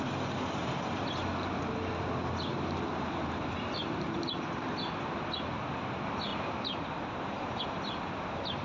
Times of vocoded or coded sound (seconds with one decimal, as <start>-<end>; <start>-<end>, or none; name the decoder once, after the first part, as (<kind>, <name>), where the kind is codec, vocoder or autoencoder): 2.5-4.3 (vocoder, BigVGAN v2); 6.3-7.6